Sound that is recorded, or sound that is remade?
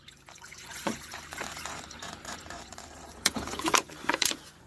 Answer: remade